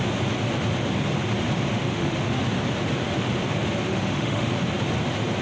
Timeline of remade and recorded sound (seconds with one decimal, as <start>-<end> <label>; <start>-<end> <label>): 0.0-1.7 recorded; 1.7-2.4 remade; 2.4-3.9 recorded; 3.9-4.5 remade; 4.5-5.4 recorded

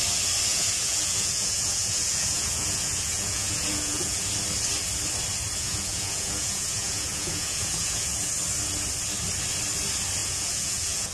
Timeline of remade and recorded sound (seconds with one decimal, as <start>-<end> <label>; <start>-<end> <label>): 0.0-0.5 recorded; 0.5-4.3 remade; 4.3-5.6 recorded; 5.6-8.3 remade; 8.3-10.2 recorded; 10.2-11.1 remade

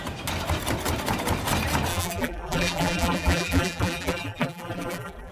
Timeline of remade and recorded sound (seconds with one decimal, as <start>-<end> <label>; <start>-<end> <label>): 0.0-1.9 recorded; 1.9-5.3 remade

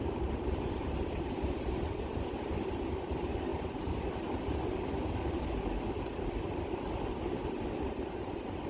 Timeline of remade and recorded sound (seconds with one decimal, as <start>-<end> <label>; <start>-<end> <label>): 0.0-8.7 recorded

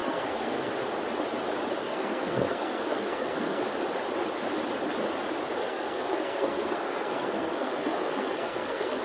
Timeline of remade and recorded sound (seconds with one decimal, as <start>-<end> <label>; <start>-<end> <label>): 0.0-0.7 remade; 0.7-1.8 recorded; 1.8-3.6 remade; 3.6-5.6 recorded; 5.6-9.0 remade

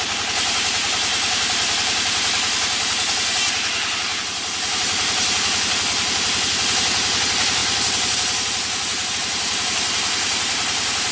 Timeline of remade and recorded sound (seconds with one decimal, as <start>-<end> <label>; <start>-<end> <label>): 0.0-11.1 recorded